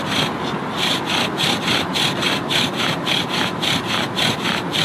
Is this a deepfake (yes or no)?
no